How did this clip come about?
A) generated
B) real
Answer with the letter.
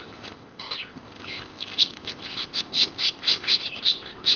A